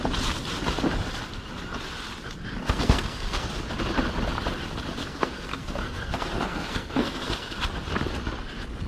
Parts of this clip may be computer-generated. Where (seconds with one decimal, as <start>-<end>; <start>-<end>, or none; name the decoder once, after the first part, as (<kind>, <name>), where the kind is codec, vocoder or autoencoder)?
2.6-3.5 (codec, SNAC); 5.0-7.6